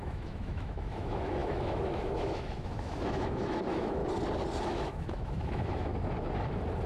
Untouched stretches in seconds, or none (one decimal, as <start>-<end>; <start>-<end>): 4.0-4.6; 5.9-6.9